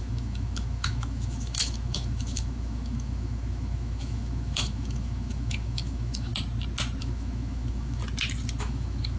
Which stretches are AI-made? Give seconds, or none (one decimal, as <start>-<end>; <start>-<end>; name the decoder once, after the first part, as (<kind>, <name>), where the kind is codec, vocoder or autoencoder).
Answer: 0.0-6.3 (autoencoder, DAC-VAE); 7.0-8.0; 8.6-9.2